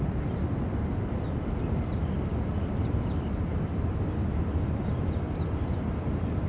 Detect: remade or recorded recorded